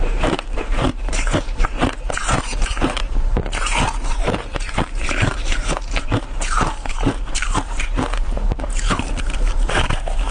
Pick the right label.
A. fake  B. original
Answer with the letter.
A